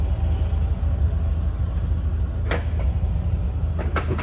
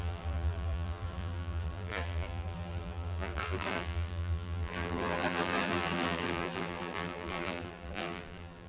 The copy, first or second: second